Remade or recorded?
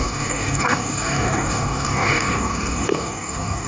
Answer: remade